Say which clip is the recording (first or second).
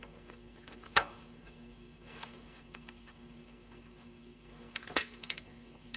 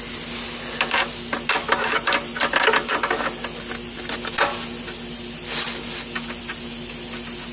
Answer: second